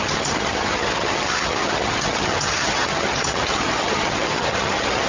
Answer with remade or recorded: remade